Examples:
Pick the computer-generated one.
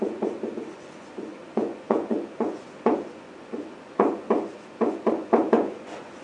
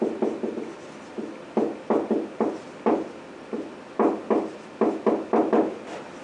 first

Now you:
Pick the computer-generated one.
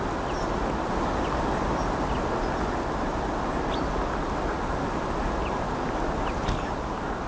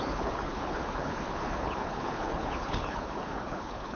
second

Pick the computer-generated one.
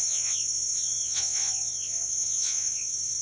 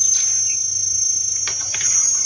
first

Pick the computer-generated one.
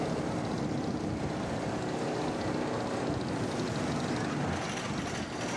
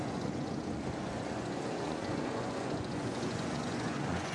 second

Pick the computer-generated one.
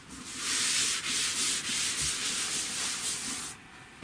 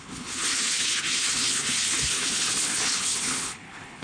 second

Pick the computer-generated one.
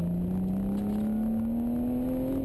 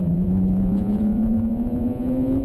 second